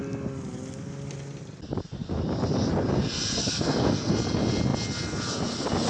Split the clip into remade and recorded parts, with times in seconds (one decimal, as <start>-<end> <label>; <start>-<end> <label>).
0.0-3.4 recorded; 3.4-4.1 remade; 4.1-5.9 recorded